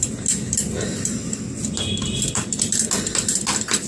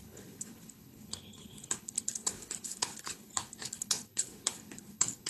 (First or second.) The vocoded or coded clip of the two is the second